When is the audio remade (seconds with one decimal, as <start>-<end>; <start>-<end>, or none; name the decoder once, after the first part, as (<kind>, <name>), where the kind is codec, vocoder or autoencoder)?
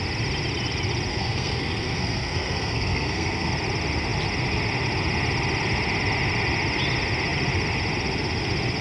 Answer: 1.1-3.5 (codec, SNAC)